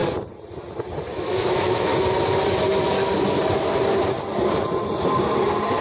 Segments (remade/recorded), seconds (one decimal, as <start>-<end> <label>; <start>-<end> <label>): 0.0-1.2 recorded; 1.2-1.9 remade; 1.9-5.8 recorded

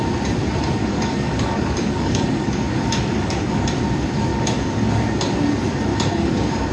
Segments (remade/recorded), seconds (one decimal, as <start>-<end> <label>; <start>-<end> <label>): 0.0-0.8 recorded; 0.8-3.6 remade; 3.6-4.3 recorded; 4.3-4.9 remade; 4.9-5.9 recorded; 5.9-6.7 remade

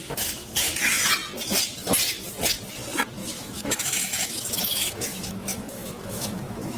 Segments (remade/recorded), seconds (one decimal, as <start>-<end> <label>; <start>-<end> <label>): 0.0-0.7 remade; 0.7-3.2 recorded; 3.2-6.8 remade

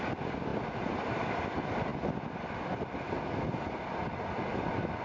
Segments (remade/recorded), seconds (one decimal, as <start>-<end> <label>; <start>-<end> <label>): 0.0-5.0 recorded

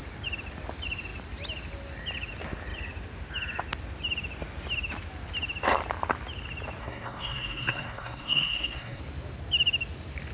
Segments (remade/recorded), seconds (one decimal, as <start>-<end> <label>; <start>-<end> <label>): 0.0-6.8 recorded; 6.8-9.0 remade; 9.0-10.3 recorded

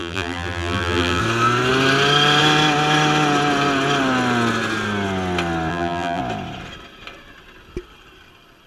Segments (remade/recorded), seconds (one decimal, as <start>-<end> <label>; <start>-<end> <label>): 0.0-1.2 remade; 1.2-5.7 recorded; 5.7-6.2 remade; 6.2-8.7 recorded

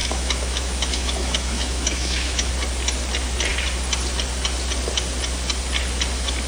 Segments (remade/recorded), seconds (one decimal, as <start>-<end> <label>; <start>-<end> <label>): 0.0-2.5 remade; 2.5-6.5 recorded

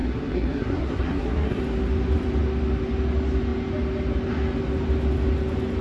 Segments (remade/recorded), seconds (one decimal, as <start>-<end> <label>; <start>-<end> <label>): 0.0-1.6 remade; 1.6-5.8 recorded